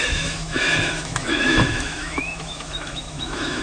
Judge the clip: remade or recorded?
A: remade